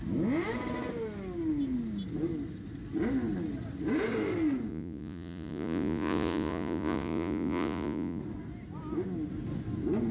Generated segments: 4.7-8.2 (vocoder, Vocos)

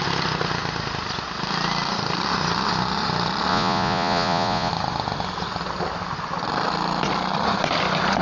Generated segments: 3.5-4.7 (vocoder, Vocos)

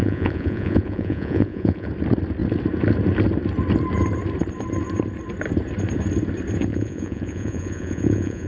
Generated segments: 0.0-1.9 (vocoder, Vocos); 6.7-8.5

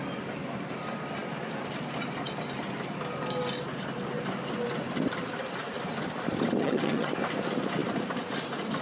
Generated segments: 6.6-7.1 (vocoder, HiFi-GAN)